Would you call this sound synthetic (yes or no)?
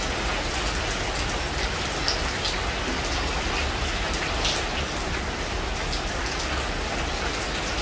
no